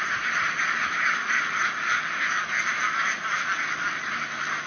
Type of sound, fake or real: real